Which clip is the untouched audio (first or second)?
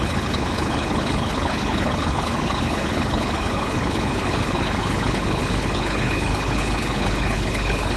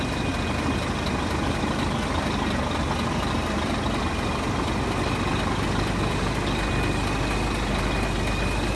second